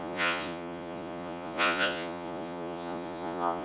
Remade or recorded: remade